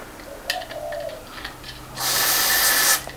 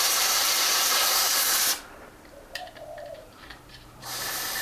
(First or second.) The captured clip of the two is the first